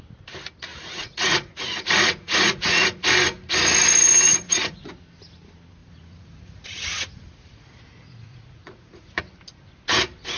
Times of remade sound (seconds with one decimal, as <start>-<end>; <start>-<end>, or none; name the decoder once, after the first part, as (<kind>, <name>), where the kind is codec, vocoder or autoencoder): 0.7-3.0 (vocoder, Vocos); 4.3-4.9; 5.8-9.2